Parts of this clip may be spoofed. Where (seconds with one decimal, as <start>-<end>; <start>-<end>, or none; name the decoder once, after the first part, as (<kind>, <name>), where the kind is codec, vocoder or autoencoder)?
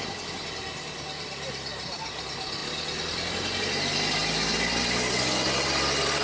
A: 1.7-2.2 (vocoder, BigVGAN v2)